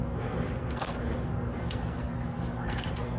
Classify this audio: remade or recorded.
remade